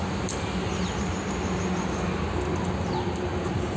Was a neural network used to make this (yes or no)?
no